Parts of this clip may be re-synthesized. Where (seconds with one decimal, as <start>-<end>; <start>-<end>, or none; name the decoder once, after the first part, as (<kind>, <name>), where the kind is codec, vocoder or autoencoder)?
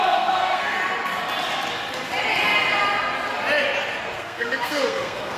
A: 0.0-0.8 (codec, SNAC); 4.0-5.4